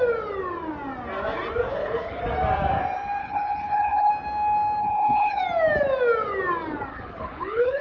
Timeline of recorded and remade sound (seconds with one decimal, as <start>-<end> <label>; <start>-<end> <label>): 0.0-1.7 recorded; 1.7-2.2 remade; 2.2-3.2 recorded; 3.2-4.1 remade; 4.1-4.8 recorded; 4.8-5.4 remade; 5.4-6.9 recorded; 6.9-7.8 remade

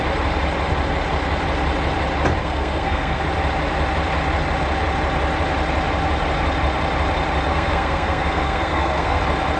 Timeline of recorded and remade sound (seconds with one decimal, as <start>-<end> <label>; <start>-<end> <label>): 0.0-2.4 recorded; 2.4-3.2 remade; 3.2-7.5 recorded; 7.5-9.2 remade; 9.2-9.6 recorded

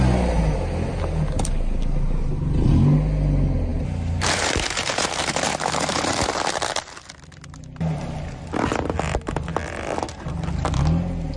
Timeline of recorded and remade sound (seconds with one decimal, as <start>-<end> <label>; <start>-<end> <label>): 0.0-3.7 recorded; 3.7-6.8 remade; 6.8-11.4 recorded